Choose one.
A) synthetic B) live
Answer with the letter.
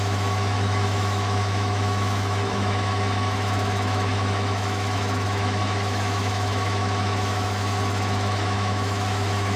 A